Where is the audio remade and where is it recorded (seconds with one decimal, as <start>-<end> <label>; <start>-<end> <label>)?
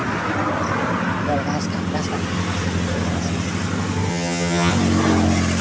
0.0-4.1 recorded; 4.1-4.7 remade; 4.7-5.6 recorded